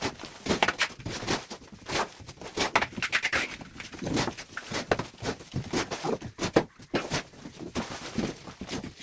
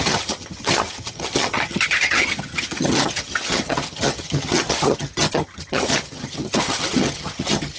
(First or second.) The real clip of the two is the first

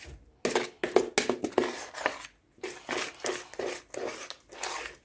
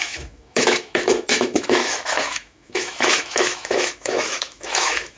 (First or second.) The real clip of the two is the first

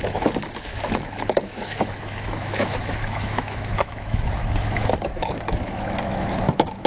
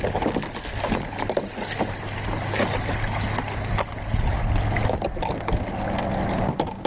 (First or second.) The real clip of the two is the second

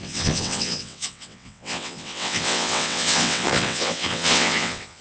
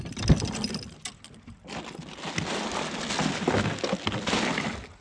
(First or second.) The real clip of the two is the second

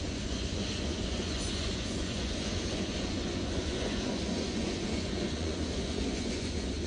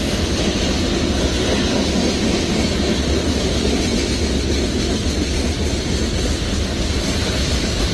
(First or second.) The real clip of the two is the second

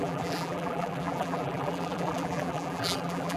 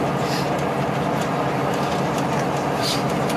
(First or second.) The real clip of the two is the second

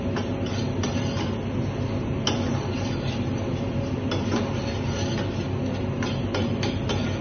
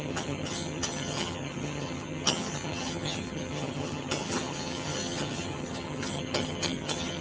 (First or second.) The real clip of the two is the first